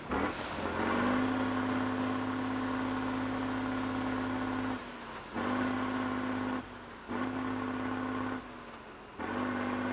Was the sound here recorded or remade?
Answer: recorded